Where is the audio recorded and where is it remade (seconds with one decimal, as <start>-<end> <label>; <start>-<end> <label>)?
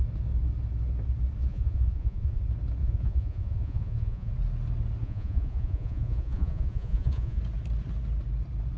0.0-1.4 recorded; 1.4-2.4 remade; 2.4-2.8 recorded; 2.8-4.3 remade; 4.3-5.0 recorded; 5.0-7.4 remade; 7.4-8.8 recorded